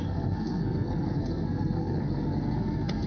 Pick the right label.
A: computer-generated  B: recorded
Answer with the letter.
A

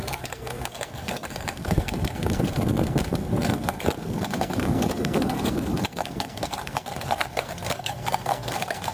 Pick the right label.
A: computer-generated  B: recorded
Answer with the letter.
A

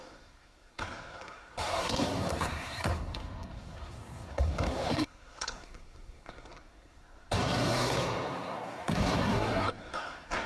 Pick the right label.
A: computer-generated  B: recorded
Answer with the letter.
A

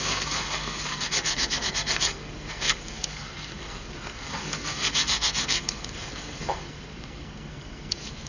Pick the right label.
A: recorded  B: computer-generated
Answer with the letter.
B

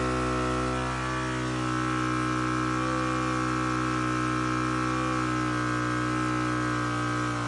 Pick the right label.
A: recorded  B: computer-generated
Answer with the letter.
A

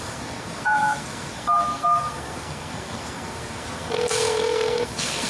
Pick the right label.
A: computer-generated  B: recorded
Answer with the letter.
A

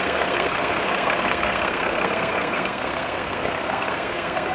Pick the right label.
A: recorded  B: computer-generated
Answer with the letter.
B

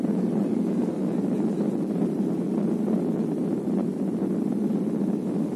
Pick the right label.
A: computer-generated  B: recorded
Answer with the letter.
B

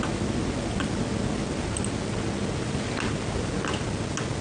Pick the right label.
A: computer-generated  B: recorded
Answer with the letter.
B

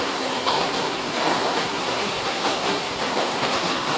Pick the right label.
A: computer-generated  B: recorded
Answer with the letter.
A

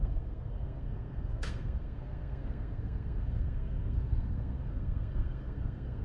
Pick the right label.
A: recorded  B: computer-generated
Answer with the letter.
B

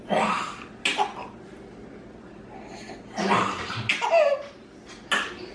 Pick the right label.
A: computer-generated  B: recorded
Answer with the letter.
B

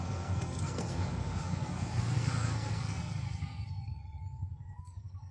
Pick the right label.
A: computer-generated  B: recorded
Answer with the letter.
A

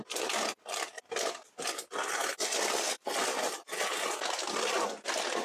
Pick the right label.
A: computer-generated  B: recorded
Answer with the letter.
B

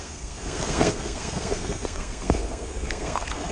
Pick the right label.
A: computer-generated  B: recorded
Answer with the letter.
A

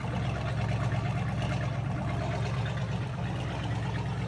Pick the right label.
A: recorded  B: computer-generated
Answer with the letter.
A